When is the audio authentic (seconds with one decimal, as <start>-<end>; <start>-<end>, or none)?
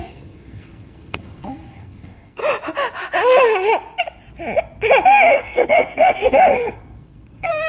2.4-5.3